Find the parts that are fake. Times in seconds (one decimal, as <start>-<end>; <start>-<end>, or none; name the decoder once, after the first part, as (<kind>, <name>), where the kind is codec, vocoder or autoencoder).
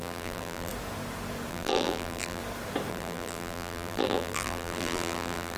0.0-0.7 (vocoder, BigVGAN v2); 1.5-2.4; 2.9-5.6